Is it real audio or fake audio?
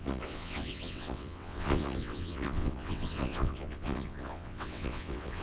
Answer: fake